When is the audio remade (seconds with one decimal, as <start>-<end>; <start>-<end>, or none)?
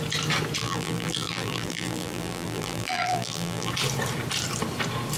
0.6-3.7